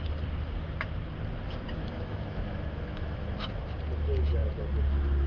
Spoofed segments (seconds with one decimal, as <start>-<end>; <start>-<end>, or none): 1.8-3.5